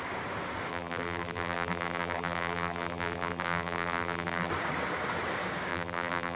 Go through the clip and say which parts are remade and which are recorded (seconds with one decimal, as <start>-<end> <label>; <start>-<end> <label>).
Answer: 0.0-0.7 recorded; 0.7-4.5 remade; 4.5-5.7 recorded; 5.7-6.4 remade